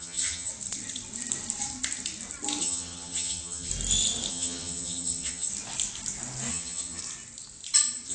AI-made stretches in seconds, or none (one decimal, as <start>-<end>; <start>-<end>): 0.0-0.5; 2.6-3.7; 4.3-5.5; 6.5-7.0